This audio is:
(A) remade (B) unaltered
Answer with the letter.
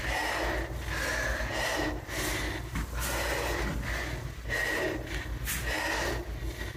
B